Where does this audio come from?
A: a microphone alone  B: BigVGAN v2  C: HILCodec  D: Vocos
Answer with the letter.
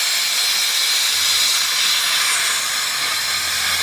A